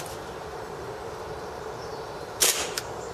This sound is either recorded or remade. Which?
remade